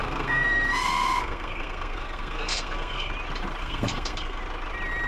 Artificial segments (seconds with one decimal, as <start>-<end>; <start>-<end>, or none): 0.0-3.1; 3.6-4.4